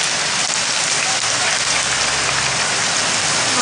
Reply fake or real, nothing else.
real